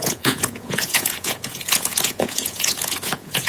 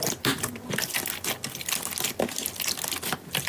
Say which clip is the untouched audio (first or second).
second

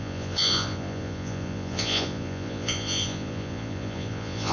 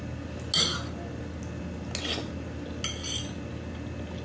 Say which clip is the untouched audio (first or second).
second